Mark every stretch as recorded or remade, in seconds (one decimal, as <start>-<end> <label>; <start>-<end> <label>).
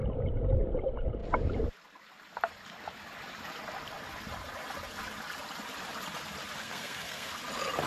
0.0-6.6 recorded; 6.6-7.3 remade; 7.3-7.9 recorded